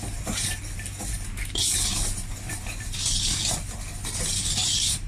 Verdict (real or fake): real